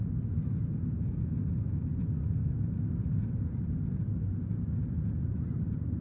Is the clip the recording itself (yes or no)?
yes